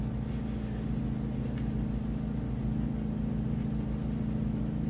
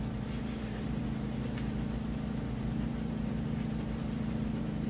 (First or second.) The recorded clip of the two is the first